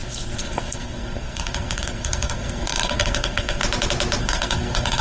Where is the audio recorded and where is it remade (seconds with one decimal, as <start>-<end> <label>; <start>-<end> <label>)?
0.0-3.6 remade; 3.6-4.2 recorded; 4.2-5.0 remade